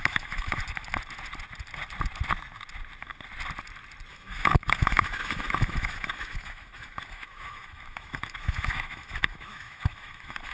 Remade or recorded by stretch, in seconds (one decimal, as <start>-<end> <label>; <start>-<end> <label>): 0.0-0.6 remade; 0.6-4.1 recorded; 4.1-10.5 remade